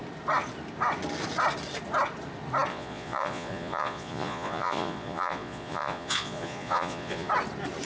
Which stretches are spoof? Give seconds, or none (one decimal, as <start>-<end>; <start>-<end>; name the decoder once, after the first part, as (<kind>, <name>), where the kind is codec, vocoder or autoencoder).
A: 2.7-7.3 (vocoder, Vocos)